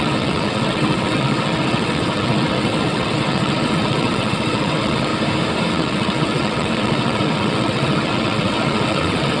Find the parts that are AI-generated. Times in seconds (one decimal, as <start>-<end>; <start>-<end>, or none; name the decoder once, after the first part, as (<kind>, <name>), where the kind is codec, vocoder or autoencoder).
0.0-5.1 (vocoder, WaveNeXt); 5.7-9.4